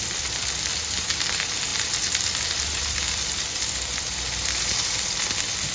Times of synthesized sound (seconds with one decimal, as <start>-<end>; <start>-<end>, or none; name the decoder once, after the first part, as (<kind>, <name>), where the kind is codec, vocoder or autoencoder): 0.0-5.7 (vocoder, BigVGAN v2)